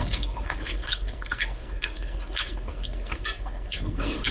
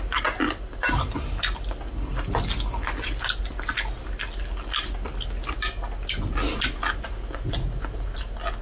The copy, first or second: first